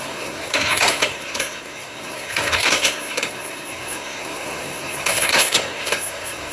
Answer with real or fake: fake